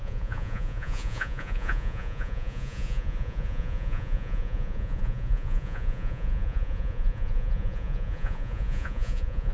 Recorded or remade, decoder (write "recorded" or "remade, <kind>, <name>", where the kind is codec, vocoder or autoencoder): remade, vocoder, Vocos